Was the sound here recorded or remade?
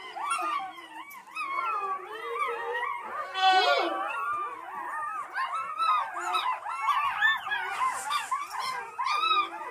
recorded